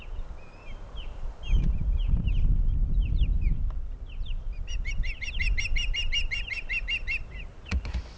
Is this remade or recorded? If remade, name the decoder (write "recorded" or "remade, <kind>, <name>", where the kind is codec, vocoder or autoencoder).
recorded